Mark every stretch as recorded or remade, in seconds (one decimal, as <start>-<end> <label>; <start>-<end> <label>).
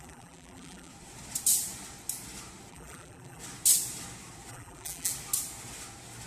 0.0-0.9 remade; 0.9-2.7 recorded; 2.7-3.4 remade; 3.4-4.5 recorded; 4.5-5.1 remade; 5.1-6.3 recorded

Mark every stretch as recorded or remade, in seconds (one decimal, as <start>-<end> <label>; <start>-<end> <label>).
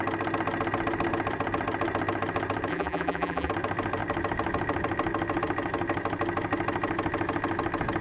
0.0-2.7 recorded; 2.7-3.5 remade; 3.5-8.0 recorded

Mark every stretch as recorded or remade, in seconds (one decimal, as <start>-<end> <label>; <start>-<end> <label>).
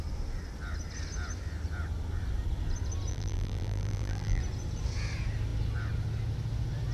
0.0-3.1 recorded; 3.1-4.4 remade; 4.4-6.9 recorded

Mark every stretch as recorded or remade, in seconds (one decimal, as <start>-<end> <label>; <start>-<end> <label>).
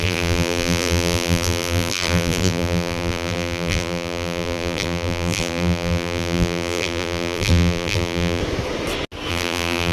0.0-8.4 remade; 8.4-9.3 recorded; 9.3-9.9 remade